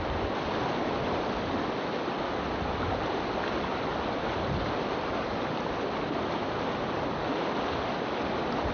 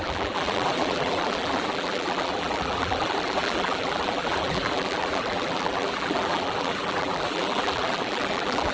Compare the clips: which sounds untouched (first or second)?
first